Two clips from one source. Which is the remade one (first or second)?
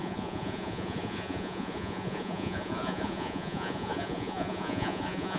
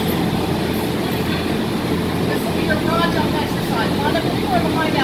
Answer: first